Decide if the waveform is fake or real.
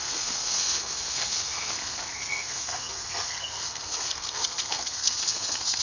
fake